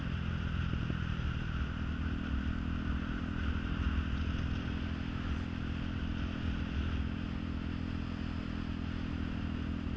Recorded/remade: recorded